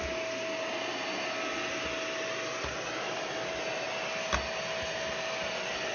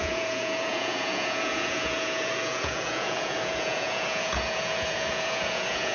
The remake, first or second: second